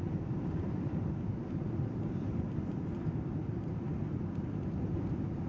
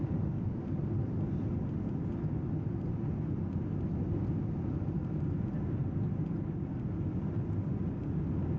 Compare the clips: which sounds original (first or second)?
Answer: second